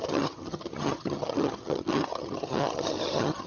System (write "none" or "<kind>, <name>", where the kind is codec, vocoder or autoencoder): vocoder, HiFi-GAN